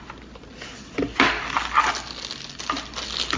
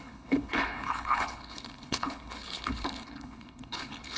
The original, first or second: first